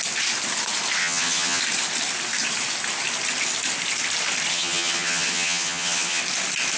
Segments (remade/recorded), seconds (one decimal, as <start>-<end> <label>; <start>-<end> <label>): 0.0-1.0 recorded; 1.0-1.6 remade; 1.6-4.5 recorded; 4.5-6.2 remade; 6.2-6.8 recorded